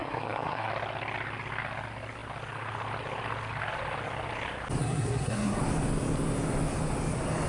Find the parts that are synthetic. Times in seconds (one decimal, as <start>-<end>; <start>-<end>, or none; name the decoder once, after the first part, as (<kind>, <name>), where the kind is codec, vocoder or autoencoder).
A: 0.0-0.7 (codec, SNAC); 4.8-5.6